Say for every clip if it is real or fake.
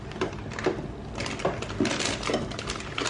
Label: real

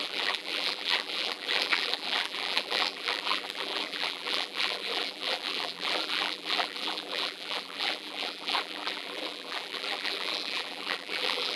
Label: fake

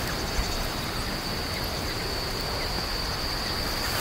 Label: real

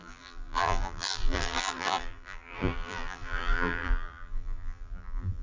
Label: fake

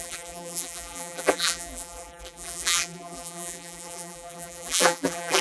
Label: fake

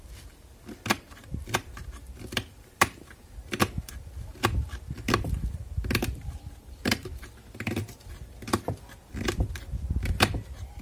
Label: fake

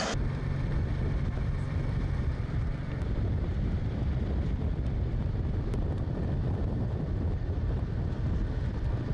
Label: fake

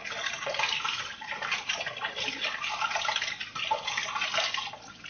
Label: real